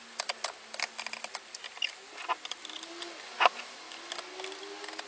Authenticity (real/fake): real